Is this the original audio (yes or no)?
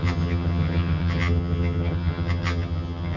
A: no